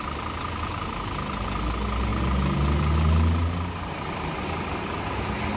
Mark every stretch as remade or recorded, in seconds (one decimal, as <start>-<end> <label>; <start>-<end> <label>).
0.0-5.6 recorded